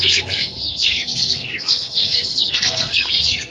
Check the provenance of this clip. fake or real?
fake